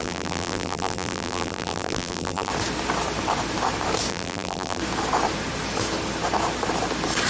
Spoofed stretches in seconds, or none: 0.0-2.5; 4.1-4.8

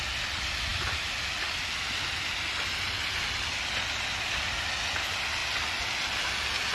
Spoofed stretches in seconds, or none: none